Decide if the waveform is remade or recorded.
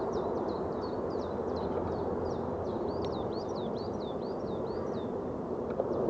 recorded